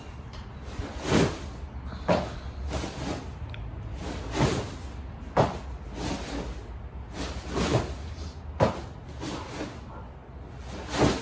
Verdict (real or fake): real